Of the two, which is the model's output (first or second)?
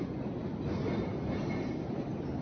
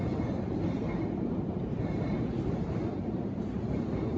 second